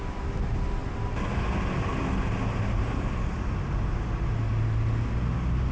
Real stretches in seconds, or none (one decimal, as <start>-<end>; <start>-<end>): 0.0-5.7